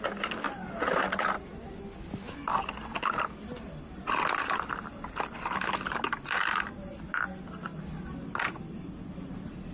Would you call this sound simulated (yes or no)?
no